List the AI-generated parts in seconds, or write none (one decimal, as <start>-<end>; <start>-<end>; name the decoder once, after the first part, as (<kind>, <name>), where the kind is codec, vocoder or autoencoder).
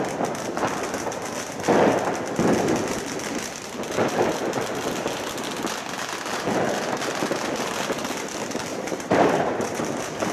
8.7-9.8 (vocoder, BigVGAN v2)